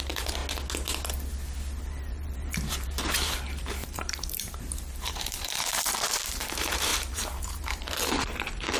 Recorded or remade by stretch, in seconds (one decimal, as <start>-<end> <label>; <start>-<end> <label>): 0.0-0.4 remade; 0.4-1.8 recorded; 1.8-8.8 remade